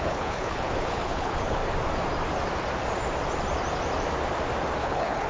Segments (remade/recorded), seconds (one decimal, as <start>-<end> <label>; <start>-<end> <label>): 0.0-1.6 remade; 1.6-4.8 recorded; 4.8-5.3 remade